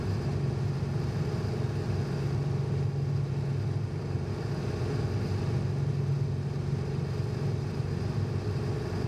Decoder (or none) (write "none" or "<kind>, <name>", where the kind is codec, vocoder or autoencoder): none